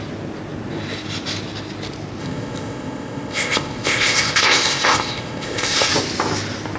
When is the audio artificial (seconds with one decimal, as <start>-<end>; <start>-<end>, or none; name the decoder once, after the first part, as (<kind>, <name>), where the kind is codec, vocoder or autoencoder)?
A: 2.2-5.9 (codec, ZipCodec)